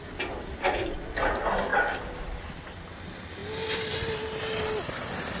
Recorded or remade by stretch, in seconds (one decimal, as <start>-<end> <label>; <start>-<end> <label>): 0.0-5.4 recorded